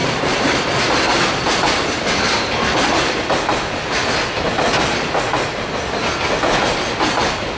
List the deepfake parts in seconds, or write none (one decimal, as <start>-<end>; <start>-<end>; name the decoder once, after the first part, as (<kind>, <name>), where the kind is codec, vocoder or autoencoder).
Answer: 0.0-0.7 (vocoder, BigVGAN v2)